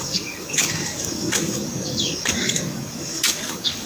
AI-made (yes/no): yes